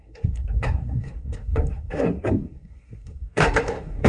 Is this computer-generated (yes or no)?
yes